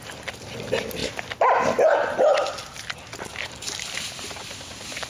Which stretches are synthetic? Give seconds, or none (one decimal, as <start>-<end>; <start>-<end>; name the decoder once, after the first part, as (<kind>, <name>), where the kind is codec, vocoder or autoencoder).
none